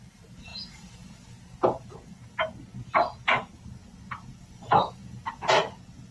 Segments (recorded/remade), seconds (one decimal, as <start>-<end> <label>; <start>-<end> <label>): 0.0-6.1 recorded